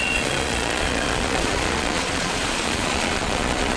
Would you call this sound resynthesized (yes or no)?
yes